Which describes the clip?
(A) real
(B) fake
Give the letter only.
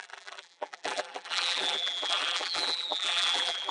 B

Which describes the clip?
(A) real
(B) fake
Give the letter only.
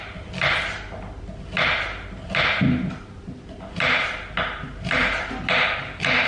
A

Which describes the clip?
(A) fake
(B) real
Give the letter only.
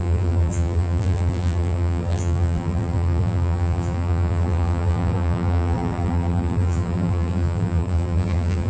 A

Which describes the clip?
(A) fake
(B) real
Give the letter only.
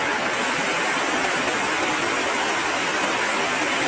B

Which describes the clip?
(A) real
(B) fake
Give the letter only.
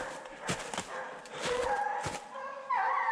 A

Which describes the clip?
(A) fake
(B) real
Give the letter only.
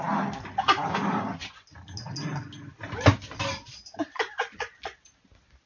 B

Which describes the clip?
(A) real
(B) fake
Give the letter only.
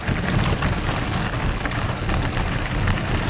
A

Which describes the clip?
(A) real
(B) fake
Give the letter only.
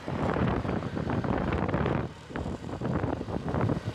B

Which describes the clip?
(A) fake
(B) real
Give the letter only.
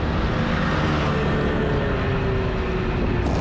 B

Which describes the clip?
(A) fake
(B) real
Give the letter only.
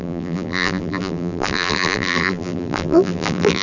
A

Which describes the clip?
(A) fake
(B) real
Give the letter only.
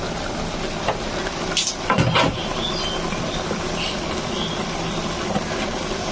B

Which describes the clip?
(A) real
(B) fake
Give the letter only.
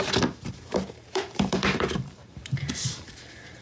B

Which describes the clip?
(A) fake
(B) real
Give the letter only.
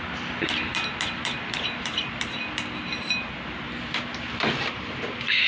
A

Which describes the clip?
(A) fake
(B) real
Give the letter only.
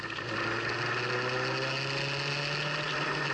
B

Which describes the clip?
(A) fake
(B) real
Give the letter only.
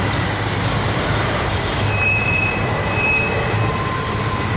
A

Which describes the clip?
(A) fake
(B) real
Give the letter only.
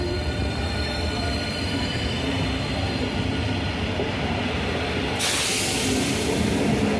B